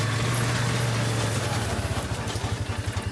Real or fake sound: real